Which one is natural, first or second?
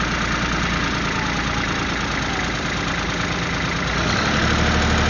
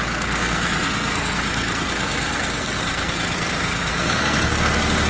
first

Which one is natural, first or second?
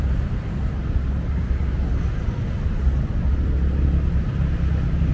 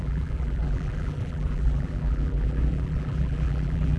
first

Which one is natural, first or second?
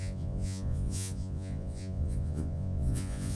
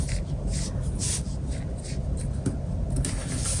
second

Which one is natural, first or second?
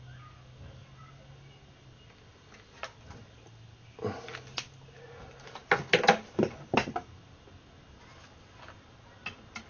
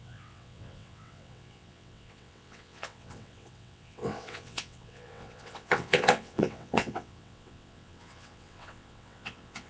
first